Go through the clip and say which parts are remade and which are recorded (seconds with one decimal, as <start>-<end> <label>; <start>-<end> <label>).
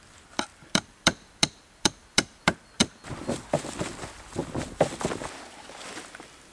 0.0-2.8 remade; 2.8-3.8 recorded; 3.8-4.4 remade; 4.4-6.5 recorded